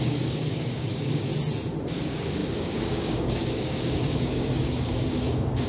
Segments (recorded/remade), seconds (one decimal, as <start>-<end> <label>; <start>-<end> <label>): 0.0-1.3 remade; 1.3-1.9 recorded; 1.9-5.7 remade